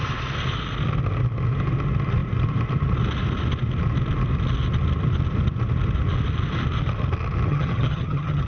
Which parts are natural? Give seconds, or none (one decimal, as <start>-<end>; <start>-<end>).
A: 0.0-7.5

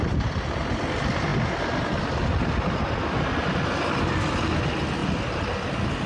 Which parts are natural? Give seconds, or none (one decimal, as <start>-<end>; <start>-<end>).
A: 0.0-6.1